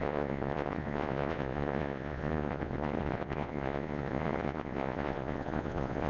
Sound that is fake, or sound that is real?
fake